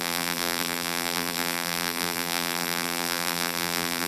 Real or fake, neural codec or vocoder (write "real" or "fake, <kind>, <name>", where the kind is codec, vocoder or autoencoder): fake, vocoder, BigVGAN v2